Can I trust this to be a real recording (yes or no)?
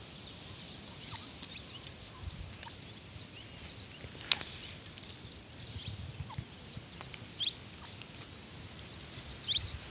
yes